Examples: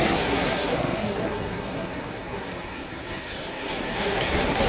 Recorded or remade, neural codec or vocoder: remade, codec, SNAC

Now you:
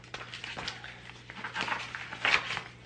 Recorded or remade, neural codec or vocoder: recorded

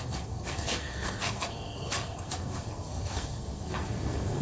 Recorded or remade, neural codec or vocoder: remade, codec, SNAC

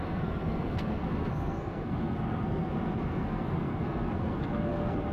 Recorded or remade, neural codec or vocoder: remade, codec, SNAC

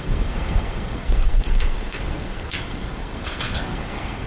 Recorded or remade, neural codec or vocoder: remade, codec, SNAC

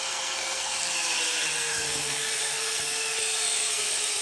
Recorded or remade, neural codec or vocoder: remade, codec, SNAC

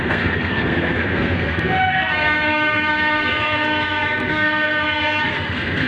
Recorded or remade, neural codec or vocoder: remade, codec, SNAC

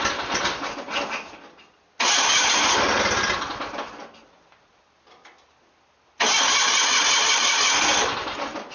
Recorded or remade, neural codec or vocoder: recorded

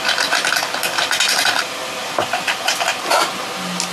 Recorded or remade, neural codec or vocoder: recorded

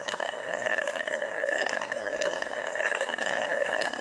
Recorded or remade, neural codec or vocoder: remade, codec, SNAC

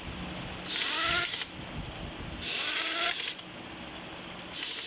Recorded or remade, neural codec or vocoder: recorded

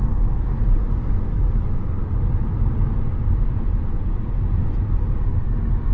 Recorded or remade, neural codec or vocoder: recorded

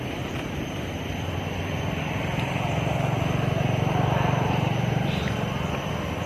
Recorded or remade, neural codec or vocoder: recorded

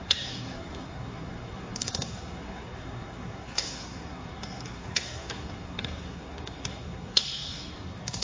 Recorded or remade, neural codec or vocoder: remade, codec, SNAC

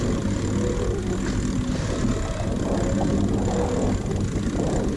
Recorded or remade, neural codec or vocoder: recorded